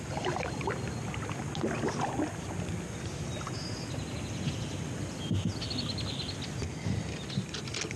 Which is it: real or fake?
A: real